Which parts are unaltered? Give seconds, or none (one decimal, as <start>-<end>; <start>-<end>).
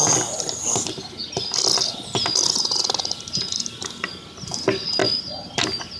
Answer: 0.0-6.0